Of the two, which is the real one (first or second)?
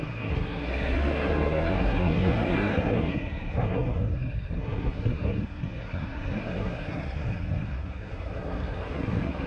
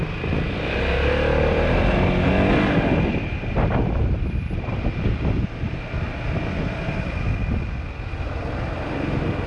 second